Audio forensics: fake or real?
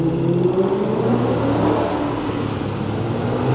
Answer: real